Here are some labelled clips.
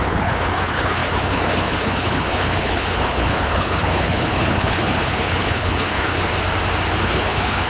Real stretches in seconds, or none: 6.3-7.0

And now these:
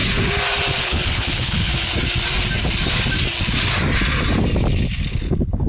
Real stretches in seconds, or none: 0.0-0.8; 1.7-5.1

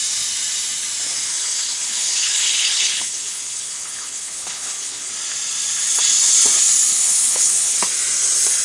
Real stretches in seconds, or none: 0.0-1.3; 5.1-6.9; 7.8-8.6